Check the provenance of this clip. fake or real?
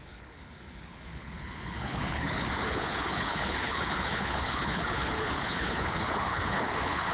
fake